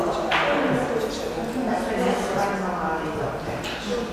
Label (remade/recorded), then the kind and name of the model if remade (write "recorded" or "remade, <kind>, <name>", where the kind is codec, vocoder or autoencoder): recorded